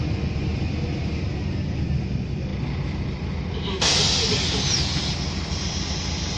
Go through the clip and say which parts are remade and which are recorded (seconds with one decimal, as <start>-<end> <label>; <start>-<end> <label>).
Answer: 0.0-6.4 recorded